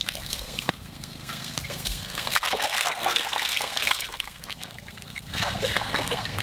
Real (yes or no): no